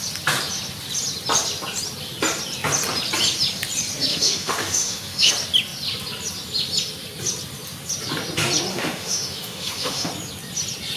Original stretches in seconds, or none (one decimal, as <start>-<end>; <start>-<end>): 0.0-4.1; 5.3-8.7; 10.1-11.0